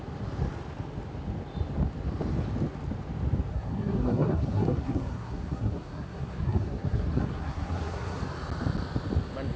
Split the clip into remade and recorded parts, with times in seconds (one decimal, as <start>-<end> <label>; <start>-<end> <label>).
0.0-3.5 recorded; 3.5-8.2 remade; 8.2-9.6 recorded